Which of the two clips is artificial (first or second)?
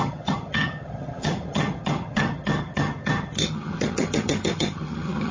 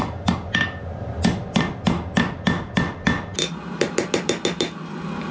first